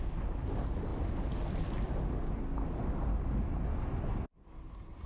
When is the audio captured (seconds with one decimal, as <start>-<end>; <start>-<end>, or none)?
0.0-5.1